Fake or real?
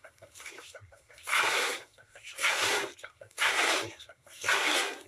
fake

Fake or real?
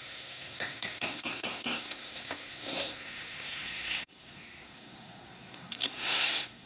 fake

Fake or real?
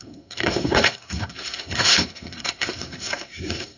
fake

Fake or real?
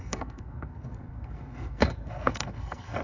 fake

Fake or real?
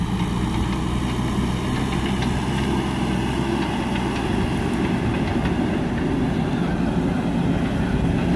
real